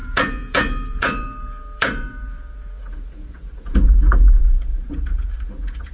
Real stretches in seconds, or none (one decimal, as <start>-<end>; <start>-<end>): none